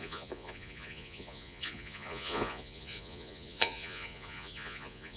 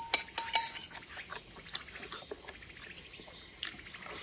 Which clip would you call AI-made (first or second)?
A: first